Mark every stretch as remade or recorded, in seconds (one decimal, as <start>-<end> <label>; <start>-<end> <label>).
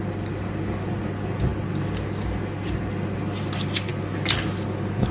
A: 0.0-5.1 recorded